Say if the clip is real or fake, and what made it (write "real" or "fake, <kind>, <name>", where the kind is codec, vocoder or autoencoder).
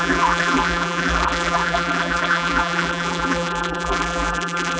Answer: fake, vocoder, BigVGAN v2